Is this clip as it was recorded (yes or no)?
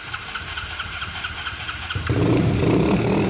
no